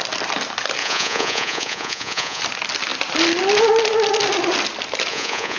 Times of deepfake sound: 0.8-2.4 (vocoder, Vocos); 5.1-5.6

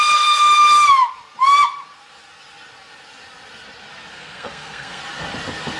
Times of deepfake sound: 4.1-5.0 (codec, SNAC)

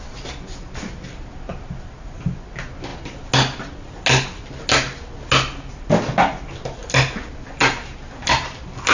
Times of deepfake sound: none